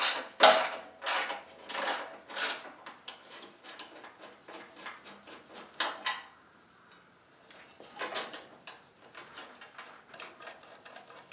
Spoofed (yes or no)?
no